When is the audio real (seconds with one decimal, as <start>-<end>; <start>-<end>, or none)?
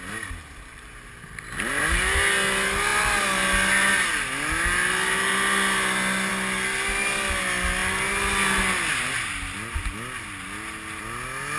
0.0-11.6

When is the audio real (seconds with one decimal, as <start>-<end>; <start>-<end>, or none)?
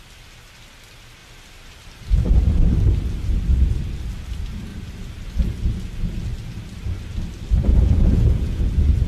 0.0-7.7; 8.6-9.1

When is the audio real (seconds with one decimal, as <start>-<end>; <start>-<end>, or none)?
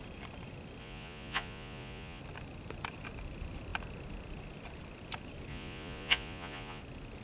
0.0-0.8; 2.2-5.5; 6.8-7.2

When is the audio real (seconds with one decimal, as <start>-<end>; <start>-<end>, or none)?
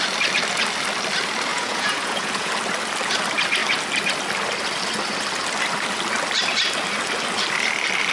0.0-1.5; 2.5-8.1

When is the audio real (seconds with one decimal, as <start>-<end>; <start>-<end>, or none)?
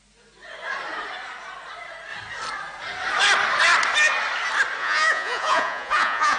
0.0-4.8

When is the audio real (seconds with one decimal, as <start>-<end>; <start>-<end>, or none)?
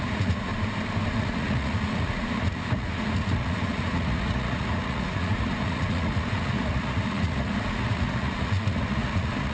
0.5-1.1